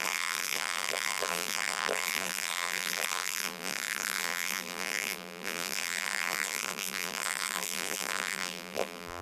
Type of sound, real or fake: fake